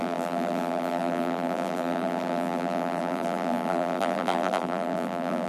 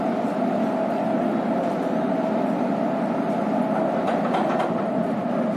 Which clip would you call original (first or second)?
second